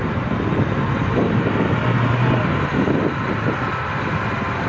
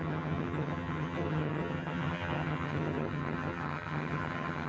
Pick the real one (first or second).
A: first